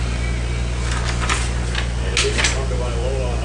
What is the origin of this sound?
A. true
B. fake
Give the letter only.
A